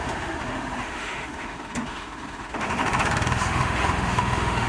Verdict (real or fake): fake